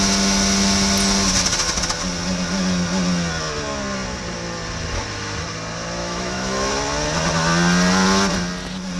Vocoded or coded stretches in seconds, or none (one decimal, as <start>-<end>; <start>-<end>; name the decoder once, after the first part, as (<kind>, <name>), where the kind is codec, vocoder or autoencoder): 6.0-6.7 (autoencoder, DAC-VAE)